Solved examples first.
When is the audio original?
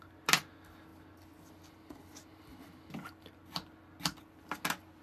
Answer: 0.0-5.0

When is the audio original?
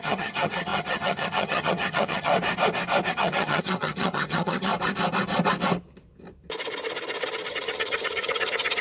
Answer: 2.3-3.1; 4.7-7.5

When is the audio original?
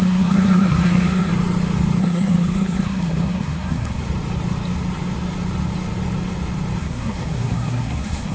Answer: 1.3-2.0; 4.0-6.8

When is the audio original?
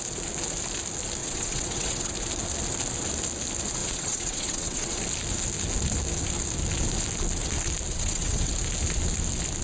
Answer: 0.0-1.2; 2.1-3.8; 5.0-7.9; 8.5-9.6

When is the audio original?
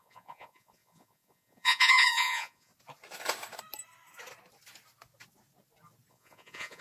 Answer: 2.7-6.1